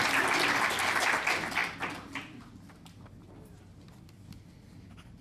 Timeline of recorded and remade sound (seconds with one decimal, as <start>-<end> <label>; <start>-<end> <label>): 0.0-5.2 recorded